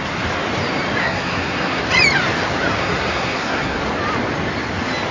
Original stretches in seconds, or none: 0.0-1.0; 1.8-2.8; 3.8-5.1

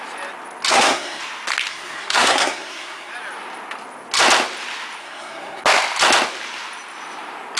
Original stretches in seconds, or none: 0.0-0.7; 1.2-1.7; 3.1-5.0; 5.6-7.6

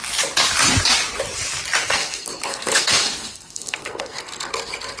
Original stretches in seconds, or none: 0.0-1.8; 4.5-5.0

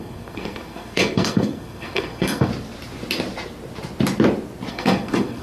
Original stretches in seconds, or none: 2.5-4.7